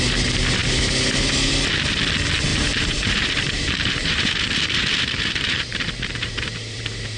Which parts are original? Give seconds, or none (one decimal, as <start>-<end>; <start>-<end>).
0.0-2.5; 6.8-7.2